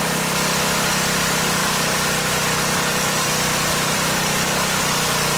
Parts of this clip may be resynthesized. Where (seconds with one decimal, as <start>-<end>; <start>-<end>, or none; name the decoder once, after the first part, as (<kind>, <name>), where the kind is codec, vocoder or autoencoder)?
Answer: 1.6-4.8 (vocoder, BigVGAN v2)